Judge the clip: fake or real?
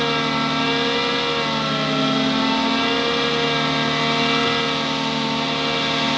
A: real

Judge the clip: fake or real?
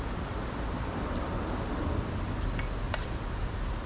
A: real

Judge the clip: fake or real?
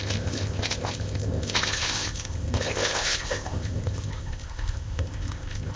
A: fake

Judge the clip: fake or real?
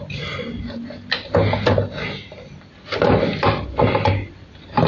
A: real